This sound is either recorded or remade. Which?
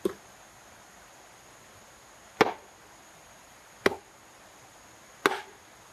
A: recorded